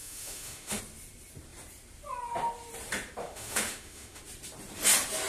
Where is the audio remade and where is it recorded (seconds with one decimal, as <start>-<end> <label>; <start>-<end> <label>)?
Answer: 0.0-0.8 remade; 0.8-3.2 recorded; 3.2-4.2 remade; 4.2-5.3 recorded